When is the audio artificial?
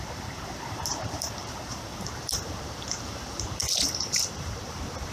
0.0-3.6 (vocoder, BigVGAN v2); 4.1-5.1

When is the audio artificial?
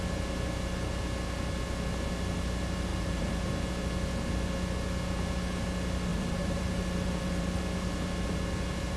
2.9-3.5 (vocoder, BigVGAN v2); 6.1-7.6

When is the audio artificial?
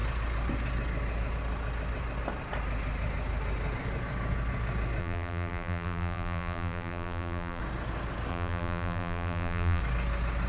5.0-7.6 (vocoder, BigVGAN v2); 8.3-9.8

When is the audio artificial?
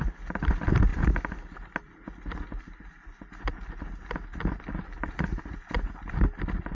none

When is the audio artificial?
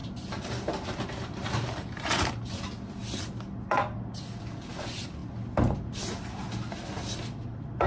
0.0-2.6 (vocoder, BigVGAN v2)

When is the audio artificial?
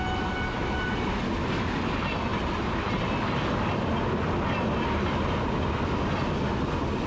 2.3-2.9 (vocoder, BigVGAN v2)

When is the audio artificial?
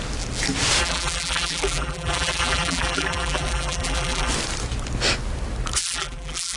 0.8-4.3 (vocoder, BigVGAN v2); 5.8-6.6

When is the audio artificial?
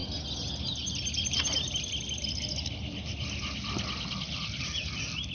none